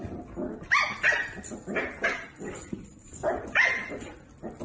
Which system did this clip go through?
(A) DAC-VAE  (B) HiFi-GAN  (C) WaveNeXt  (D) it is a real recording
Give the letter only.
D